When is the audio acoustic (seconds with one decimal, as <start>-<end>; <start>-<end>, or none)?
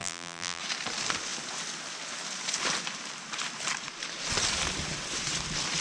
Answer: 0.6-5.8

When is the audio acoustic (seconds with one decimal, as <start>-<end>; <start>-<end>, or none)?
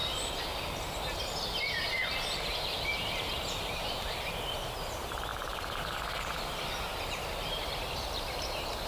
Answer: 2.0-2.6; 5.3-5.8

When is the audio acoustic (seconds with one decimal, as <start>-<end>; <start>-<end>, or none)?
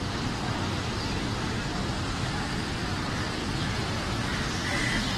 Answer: 0.0-1.7; 2.5-5.2